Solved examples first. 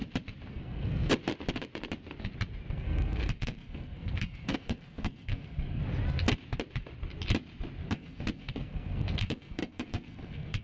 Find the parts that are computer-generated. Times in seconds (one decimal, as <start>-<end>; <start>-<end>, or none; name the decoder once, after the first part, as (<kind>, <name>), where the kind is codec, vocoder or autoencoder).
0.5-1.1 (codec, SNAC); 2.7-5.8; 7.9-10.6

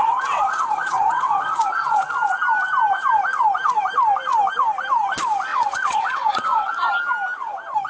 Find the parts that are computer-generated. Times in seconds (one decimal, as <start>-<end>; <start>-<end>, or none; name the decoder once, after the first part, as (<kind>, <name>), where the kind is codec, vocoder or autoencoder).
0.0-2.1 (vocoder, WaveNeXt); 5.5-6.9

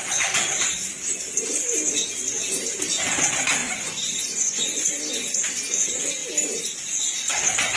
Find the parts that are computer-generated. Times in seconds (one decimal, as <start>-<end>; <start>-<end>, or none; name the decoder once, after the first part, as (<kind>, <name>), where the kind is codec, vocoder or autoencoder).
3.6-4.9 (vocoder, Vocos)

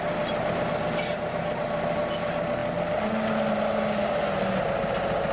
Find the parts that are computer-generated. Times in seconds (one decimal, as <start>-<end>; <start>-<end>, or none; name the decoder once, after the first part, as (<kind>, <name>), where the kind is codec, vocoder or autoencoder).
none